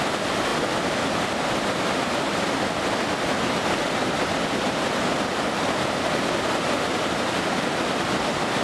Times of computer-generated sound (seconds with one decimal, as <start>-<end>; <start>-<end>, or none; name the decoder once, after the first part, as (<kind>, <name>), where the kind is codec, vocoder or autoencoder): none

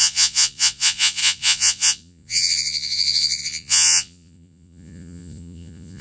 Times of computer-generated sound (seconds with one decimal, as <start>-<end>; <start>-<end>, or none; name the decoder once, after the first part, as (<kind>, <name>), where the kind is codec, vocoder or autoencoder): 0.0-6.0 (vocoder, Vocos)

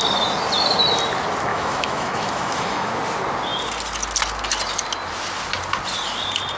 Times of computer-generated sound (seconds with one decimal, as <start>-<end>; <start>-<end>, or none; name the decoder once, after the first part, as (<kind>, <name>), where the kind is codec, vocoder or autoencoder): 1.5-3.0 (autoencoder, DAC-VAE)